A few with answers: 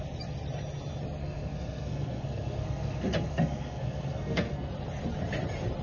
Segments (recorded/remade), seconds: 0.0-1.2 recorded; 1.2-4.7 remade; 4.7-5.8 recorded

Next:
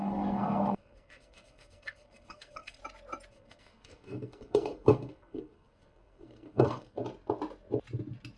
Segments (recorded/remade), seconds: 0.0-2.8 remade; 2.8-3.3 recorded; 3.3-7.0 remade; 7.0-8.4 recorded

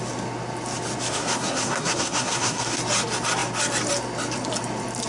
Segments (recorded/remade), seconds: 0.0-1.1 recorded; 1.1-2.8 remade; 2.8-5.1 recorded

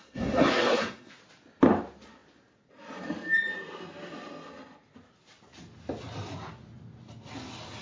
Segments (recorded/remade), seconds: 0.0-1.1 remade; 1.1-7.8 recorded

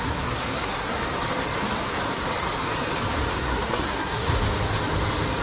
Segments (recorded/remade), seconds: 0.0-1.0 remade; 1.0-3.4 recorded; 3.4-4.3 remade; 4.3-5.4 recorded

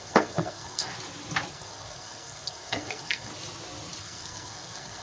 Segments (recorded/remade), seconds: 0.0-0.9 remade; 0.9-1.5 recorded; 1.5-3.3 remade; 3.3-4.0 recorded; 4.0-5.0 remade

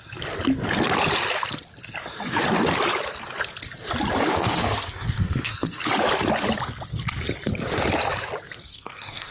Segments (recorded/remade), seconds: 0.0-4.3 recorded; 4.3-5.8 remade; 5.8-8.7 recorded; 8.7-9.3 remade

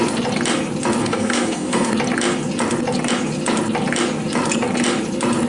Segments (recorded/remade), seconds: 0.0-1.0 recorded; 1.0-1.9 remade; 1.9-5.5 recorded